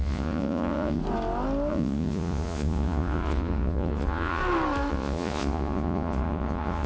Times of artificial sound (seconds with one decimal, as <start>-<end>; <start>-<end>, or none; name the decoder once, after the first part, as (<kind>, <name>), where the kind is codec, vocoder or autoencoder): 0.0-1.0 (vocoder, Vocos); 1.7-4.4; 4.9-6.9

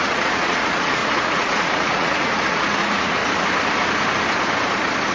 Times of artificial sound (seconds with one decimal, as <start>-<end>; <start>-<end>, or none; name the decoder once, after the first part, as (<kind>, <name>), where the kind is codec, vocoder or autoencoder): 0.0-3.2 (vocoder, Vocos)

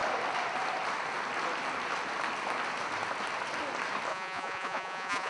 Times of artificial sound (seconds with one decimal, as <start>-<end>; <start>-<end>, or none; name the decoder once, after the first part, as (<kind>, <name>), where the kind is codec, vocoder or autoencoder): 4.1-5.3 (vocoder, Vocos)

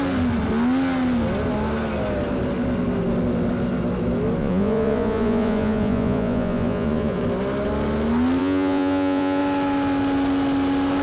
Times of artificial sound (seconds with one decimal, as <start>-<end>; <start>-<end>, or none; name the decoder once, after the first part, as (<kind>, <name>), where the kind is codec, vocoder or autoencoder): 4.4-7.2 (vocoder, Vocos); 8.4-9.4

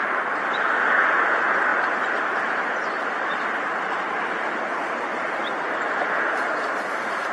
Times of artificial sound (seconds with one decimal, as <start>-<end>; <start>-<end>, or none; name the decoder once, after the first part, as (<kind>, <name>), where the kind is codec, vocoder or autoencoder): none